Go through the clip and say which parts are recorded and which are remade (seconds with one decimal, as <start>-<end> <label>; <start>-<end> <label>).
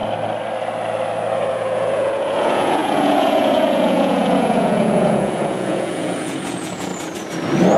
0.0-1.5 recorded; 1.5-6.9 remade; 6.9-7.8 recorded